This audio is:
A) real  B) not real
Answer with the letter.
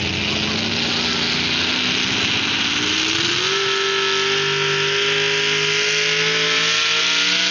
A